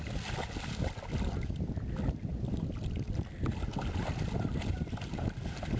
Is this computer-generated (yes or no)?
no